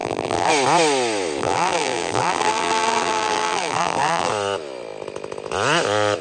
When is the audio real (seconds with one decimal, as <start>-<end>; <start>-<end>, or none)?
0.5-1.4; 4.3-6.2